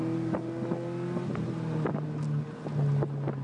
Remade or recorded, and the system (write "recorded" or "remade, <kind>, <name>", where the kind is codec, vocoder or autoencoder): recorded